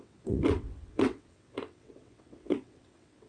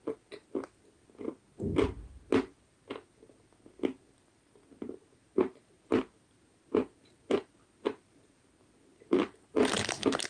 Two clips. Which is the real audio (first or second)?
second